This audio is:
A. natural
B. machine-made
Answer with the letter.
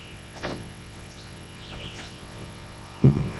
B